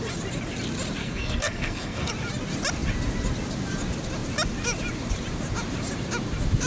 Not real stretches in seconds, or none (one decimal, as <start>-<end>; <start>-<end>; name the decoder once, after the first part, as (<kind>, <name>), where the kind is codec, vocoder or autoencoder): 1.0-2.1 (codec, SNAC)